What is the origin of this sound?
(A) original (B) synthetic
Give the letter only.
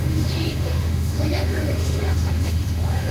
B